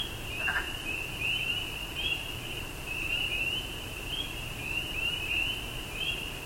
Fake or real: fake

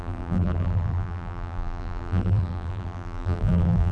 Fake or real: fake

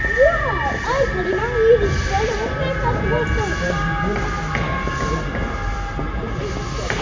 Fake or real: real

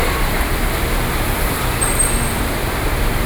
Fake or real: real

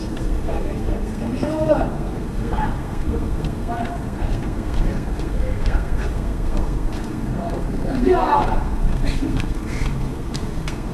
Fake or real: fake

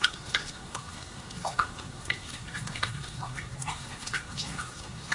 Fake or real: fake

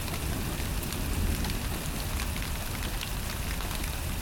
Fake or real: real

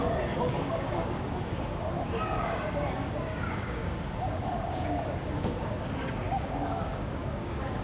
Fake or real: fake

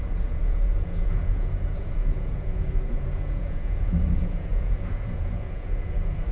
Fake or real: fake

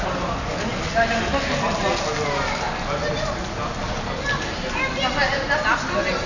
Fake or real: real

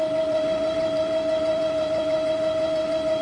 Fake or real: fake